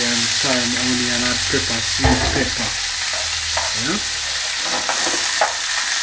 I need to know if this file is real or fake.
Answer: real